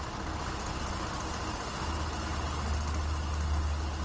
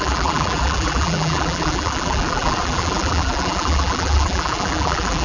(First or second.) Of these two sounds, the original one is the first